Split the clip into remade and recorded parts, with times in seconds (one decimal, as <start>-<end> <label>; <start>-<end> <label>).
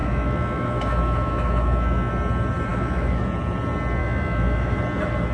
0.0-2.1 remade; 2.1-2.7 recorded; 2.7-3.2 remade; 3.2-4.0 recorded; 4.0-4.8 remade; 4.8-5.3 recorded